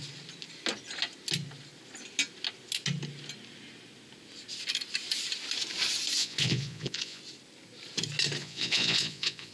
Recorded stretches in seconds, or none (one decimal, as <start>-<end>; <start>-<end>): 0.0-6.2; 7.2-8.4

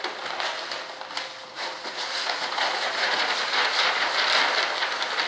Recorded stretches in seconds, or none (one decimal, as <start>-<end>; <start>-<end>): 0.0-1.4; 4.1-5.3

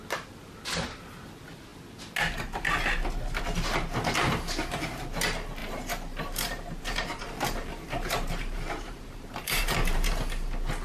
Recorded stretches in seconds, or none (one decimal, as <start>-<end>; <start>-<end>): 0.0-5.6; 10.1-10.8

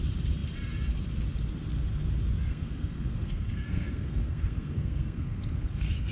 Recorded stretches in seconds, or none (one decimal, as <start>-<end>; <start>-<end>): 0.0-2.5

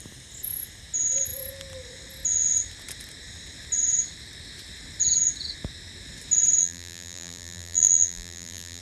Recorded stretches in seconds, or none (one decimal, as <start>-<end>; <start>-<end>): 0.0-6.6

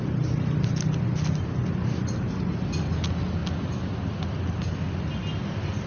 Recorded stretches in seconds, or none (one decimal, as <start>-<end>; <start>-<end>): 0.0-5.9

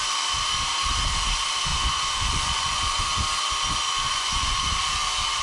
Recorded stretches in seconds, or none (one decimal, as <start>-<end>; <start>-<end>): 0.0-1.7; 3.1-3.9; 4.7-5.4

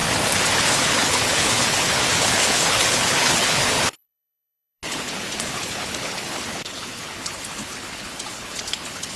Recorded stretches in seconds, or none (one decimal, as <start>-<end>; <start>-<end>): 0.0-0.6